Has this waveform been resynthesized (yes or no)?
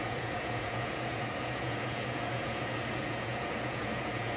yes